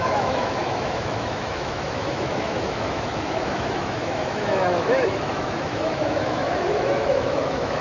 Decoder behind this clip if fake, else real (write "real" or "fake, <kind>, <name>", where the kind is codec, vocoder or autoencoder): fake, autoencoder, DAC-VAE